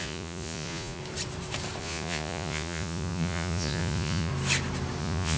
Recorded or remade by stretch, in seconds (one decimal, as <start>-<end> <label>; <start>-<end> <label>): 0.0-1.0 remade; 1.0-1.8 recorded; 1.8-4.3 remade; 4.3-5.0 recorded; 5.0-5.4 remade